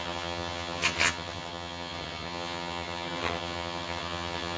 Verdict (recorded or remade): remade